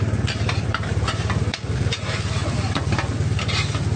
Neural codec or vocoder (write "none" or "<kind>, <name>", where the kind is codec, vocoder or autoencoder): none